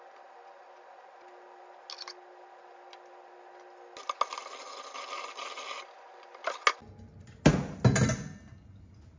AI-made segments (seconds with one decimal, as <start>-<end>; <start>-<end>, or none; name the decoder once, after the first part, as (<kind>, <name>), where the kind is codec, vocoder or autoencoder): none